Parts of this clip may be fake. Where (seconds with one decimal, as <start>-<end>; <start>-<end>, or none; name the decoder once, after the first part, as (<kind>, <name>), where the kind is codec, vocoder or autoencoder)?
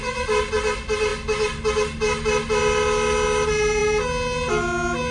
none